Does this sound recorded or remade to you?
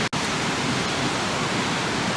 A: recorded